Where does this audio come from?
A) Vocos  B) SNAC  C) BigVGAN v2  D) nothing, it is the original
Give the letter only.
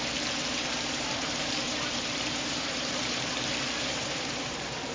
C